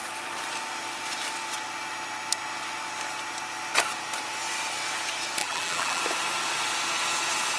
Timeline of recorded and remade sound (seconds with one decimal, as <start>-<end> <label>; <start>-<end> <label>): 0.0-5.4 recorded; 5.4-6.0 remade; 6.0-7.6 recorded